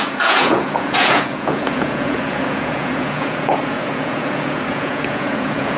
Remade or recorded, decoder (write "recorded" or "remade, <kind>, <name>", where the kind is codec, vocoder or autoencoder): remade, vocoder, Vocos